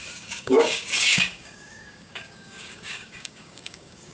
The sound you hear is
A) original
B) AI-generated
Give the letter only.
B